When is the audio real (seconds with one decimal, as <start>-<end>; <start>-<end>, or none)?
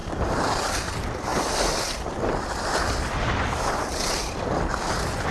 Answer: none